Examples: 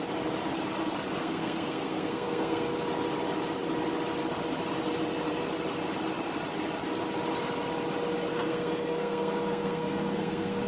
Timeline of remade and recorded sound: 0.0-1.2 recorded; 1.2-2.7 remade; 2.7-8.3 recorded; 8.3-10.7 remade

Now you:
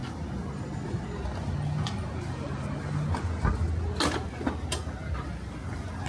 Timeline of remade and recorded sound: 0.0-6.1 recorded